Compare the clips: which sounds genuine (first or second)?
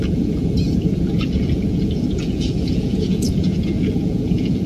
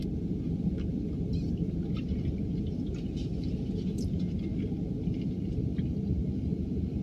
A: second